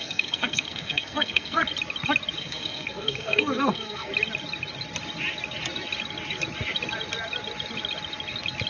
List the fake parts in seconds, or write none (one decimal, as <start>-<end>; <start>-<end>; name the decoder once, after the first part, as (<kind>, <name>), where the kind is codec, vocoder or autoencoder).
0.0-1.6 (codec, SNAC); 2.4-4.1